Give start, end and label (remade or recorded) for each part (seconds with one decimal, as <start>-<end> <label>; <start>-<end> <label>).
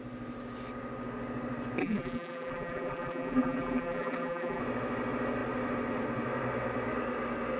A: 0.0-1.8 recorded; 1.8-4.6 remade; 4.6-7.6 recorded